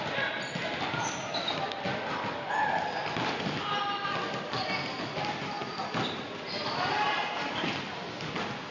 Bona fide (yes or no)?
yes